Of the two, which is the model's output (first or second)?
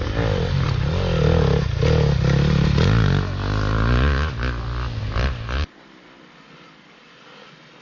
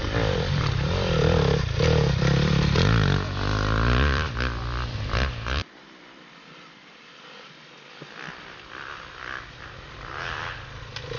second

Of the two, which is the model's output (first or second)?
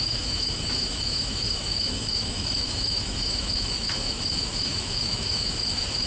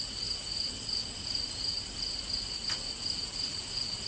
first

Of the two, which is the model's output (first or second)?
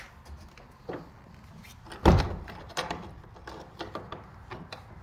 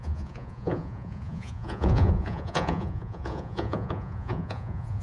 second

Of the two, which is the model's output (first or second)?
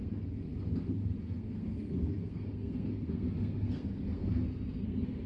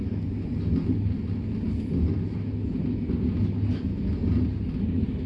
first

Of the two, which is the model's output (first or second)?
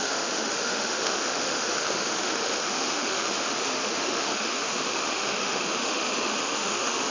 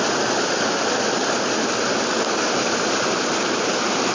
first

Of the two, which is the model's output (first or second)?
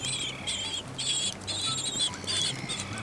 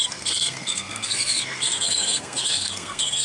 second